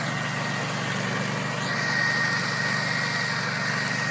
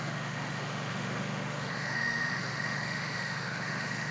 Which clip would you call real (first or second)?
first